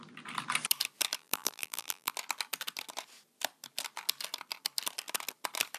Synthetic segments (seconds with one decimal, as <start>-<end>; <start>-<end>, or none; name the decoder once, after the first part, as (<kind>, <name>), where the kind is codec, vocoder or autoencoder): 1.2-2.1 (vocoder, BigVGAN v2)